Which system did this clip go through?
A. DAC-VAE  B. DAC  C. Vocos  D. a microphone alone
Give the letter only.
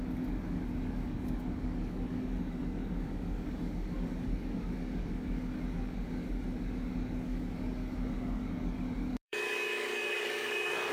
B